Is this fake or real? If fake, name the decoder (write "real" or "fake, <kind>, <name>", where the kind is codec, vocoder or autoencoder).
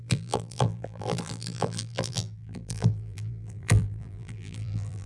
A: fake, vocoder, BigVGAN v2